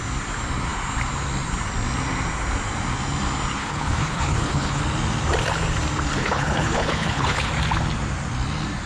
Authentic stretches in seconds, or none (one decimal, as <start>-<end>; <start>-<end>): 0.0-3.6; 4.8-6.2; 7.5-8.9